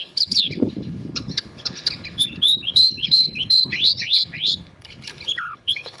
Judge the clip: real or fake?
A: fake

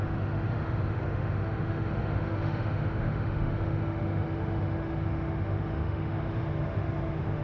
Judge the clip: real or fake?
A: fake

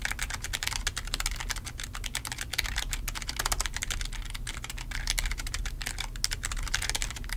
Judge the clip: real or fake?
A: real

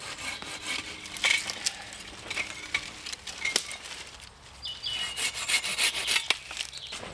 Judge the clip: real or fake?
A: real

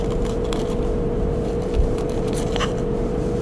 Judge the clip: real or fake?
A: fake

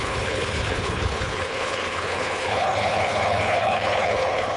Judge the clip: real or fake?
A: fake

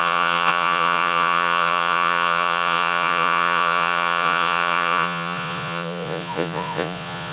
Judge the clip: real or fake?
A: fake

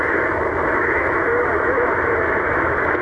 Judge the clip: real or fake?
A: fake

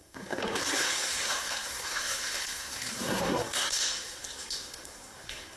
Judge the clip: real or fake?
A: fake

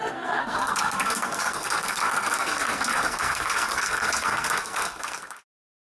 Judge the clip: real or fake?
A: fake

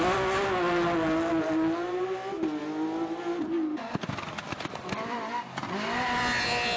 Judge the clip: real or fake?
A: real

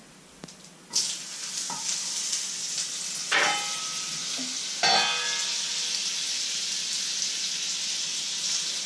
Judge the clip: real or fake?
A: real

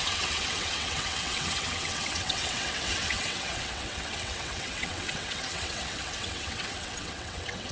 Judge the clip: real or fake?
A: fake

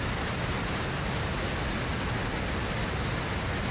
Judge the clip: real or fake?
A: real